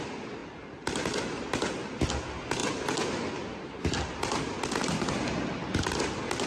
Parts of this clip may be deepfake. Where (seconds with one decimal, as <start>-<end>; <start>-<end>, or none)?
none